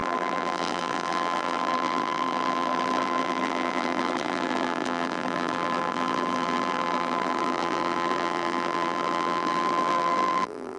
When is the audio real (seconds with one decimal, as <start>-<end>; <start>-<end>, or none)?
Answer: none